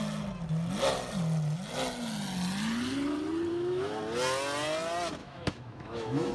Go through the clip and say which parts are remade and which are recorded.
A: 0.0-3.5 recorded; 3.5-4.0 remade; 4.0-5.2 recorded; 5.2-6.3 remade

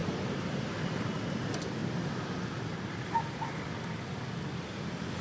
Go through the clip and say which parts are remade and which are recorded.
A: 0.0-1.2 remade; 1.2-5.2 recorded

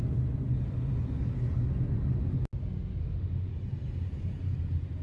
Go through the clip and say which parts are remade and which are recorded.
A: 0.0-3.0 recorded; 3.0-3.5 remade; 3.5-5.0 recorded

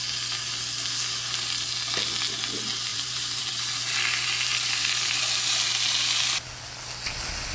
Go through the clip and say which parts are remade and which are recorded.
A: 0.0-2.9 recorded; 2.9-3.5 remade; 3.5-4.5 recorded; 4.5-5.2 remade; 5.2-7.5 recorded

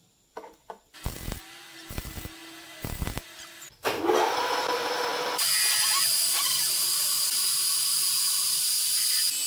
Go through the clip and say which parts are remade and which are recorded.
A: 0.0-9.5 recorded